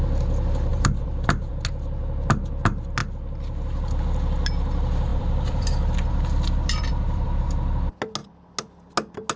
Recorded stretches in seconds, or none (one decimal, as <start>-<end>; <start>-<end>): 0.0-0.7; 1.5-5.1; 7.4-9.4